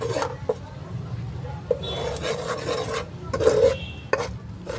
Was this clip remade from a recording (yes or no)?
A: no